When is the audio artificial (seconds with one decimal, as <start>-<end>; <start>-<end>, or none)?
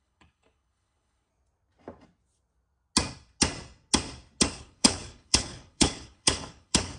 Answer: 0.0-1.3; 4.5-7.0